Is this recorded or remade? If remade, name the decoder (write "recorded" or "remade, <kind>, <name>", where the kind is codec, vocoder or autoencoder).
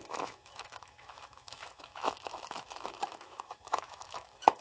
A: remade, autoencoder, DAC-VAE